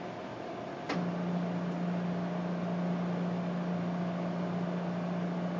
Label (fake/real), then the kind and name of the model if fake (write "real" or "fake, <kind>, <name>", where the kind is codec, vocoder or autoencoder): real